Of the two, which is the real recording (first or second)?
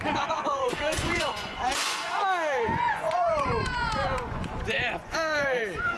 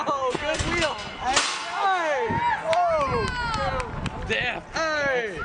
second